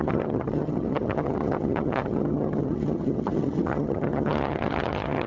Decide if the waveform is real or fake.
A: fake